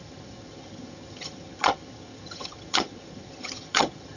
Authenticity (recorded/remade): remade